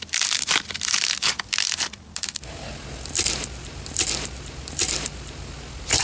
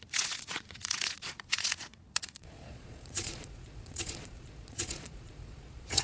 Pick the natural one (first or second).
first